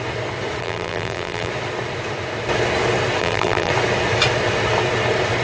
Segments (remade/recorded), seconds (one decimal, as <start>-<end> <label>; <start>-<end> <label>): 0.0-0.6 recorded; 0.6-1.5 remade; 1.5-3.2 recorded; 3.2-3.7 remade; 3.7-5.4 recorded